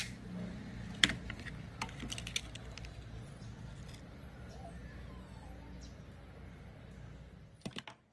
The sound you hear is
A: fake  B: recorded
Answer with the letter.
B